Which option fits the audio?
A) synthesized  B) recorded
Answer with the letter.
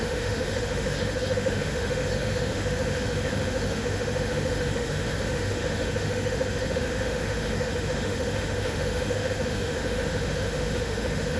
A